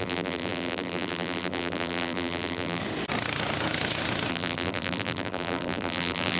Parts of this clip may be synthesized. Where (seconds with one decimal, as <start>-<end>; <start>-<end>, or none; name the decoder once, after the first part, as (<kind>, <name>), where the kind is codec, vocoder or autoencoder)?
0.0-2.8 (vocoder, BigVGAN v2); 4.3-6.4